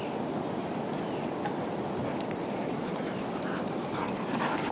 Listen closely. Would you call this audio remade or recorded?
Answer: recorded